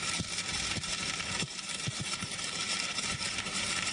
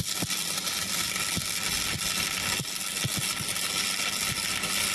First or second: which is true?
second